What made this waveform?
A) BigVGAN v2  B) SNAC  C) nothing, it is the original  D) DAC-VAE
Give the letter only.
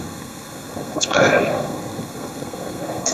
B